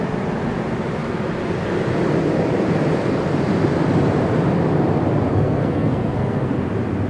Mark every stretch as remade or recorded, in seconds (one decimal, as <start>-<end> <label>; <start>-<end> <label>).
0.0-5.3 recorded; 5.3-6.5 remade; 6.5-7.1 recorded